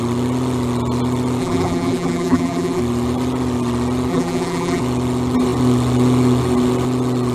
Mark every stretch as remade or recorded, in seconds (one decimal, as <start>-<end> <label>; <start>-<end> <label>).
0.0-1.4 recorded; 1.4-2.8 remade; 2.8-4.1 recorded; 4.1-4.8 remade; 4.8-7.3 recorded